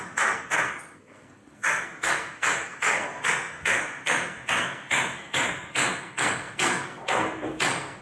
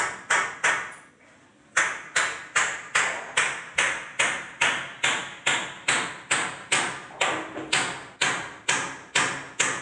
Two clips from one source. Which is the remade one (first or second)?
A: first